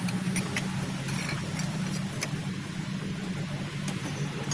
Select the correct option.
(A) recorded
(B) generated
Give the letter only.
A